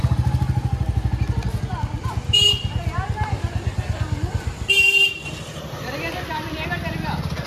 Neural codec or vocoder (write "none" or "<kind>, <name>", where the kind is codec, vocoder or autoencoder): none